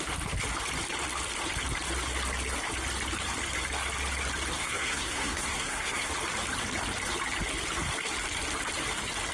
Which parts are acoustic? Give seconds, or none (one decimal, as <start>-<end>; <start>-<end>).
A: 0.0-4.6; 6.1-9.3